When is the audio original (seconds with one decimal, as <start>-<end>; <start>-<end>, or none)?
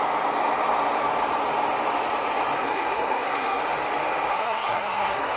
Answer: 0.0-2.6; 3.6-4.3